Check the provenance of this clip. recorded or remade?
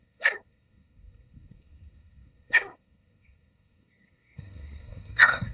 remade